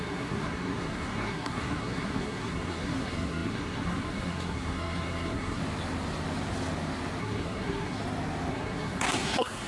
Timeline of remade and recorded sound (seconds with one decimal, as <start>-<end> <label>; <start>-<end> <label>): 0.0-5.6 remade; 5.6-7.2 recorded; 7.2-8.0 remade; 8.0-8.5 recorded; 8.5-9.7 remade